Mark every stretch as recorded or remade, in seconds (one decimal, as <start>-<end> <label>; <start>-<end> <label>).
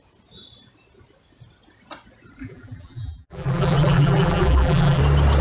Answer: 0.0-2.4 recorded; 2.4-5.0 remade; 5.0-5.4 recorded